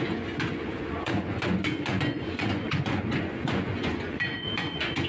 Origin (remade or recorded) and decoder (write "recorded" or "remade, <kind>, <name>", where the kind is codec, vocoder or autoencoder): remade, vocoder, Vocos